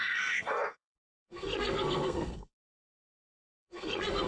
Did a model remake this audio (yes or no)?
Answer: yes